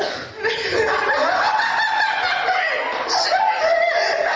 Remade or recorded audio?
recorded